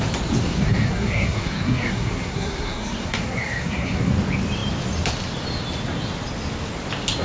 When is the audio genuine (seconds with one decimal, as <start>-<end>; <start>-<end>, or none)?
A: 0.0-0.4; 4.1-7.2

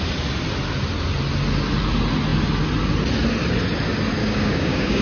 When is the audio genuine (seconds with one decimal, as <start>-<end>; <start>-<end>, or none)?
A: 0.0-4.2

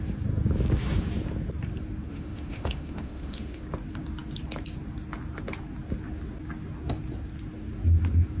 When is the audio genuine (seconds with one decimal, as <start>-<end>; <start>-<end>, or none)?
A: 0.0-2.1; 3.6-8.4

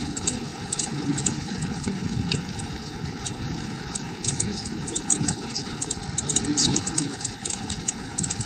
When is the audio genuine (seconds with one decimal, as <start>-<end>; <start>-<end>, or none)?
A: 6.0-6.6

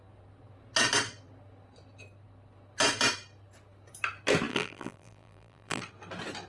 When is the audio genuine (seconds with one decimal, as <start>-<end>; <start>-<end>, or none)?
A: 0.0-4.5; 5.8-6.5

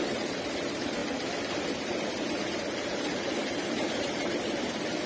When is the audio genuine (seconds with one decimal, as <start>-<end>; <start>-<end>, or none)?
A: 1.0-3.0

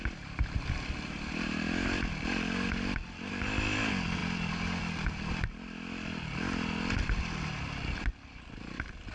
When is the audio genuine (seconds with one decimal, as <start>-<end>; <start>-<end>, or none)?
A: 0.0-9.1